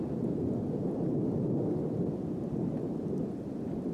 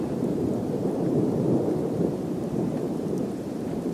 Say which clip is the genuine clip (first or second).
first